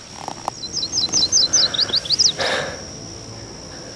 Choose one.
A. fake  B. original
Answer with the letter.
B